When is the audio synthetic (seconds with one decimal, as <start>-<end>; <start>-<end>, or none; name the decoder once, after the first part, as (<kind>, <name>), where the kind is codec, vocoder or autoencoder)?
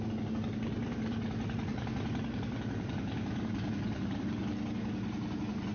0.8-4.2 (vocoder, BigVGAN v2)